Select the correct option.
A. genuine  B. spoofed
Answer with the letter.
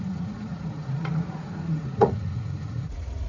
B